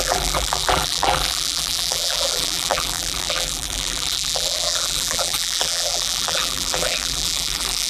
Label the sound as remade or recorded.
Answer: remade